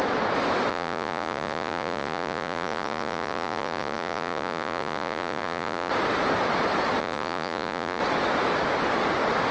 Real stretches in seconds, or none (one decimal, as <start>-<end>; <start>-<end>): 0.0-0.7; 5.9-7.0; 8.0-9.5